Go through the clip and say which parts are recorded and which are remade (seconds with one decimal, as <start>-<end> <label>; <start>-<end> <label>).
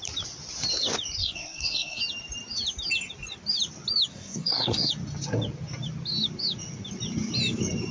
0.0-1.2 recorded; 1.2-2.0 remade; 2.0-4.1 recorded; 4.1-4.9 remade; 4.9-7.9 recorded